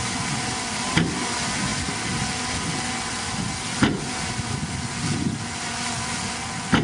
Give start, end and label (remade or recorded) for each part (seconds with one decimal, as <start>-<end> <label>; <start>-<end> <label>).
0.0-6.8 recorded

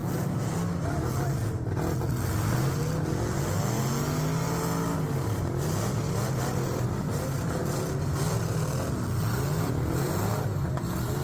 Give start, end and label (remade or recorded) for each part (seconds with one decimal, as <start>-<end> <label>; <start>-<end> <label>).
0.0-11.2 recorded